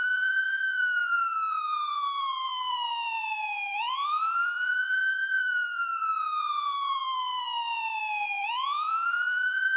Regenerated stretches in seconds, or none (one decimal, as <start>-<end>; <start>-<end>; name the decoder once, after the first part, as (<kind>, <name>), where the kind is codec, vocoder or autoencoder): 0.0-9.8 (vocoder, Vocos)